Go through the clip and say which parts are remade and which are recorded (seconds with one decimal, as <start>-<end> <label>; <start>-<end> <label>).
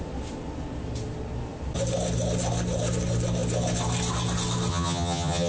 0.0-4.7 recorded; 4.7-5.5 remade